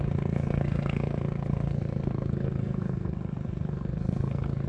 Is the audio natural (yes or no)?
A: no